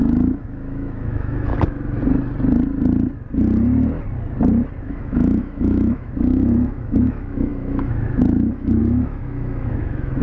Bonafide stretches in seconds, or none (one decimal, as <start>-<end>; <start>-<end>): 1.5-4.8